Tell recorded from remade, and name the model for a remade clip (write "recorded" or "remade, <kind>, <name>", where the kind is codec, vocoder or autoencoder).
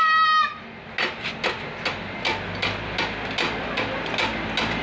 recorded